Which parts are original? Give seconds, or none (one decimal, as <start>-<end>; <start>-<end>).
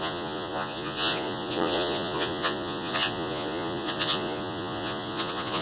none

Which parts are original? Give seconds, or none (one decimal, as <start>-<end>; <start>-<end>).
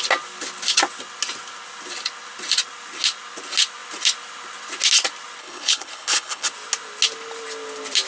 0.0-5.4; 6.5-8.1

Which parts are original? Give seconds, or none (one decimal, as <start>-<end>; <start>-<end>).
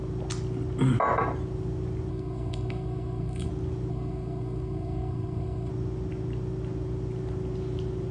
0.0-2.1; 3.5-3.9; 5.7-8.1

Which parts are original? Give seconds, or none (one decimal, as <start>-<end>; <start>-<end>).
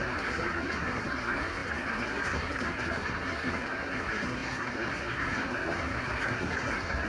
none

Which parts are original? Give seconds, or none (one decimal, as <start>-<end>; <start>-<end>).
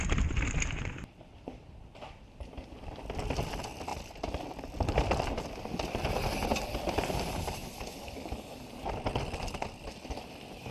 0.0-3.9; 5.3-10.7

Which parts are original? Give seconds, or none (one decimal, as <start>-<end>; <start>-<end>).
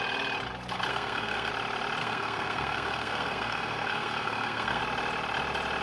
0.0-0.9; 1.5-2.0; 4.8-5.8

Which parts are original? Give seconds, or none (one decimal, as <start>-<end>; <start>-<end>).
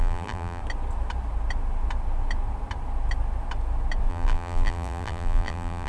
0.6-4.1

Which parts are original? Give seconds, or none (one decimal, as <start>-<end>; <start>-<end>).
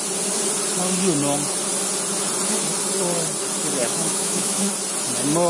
0.0-3.8; 4.7-5.5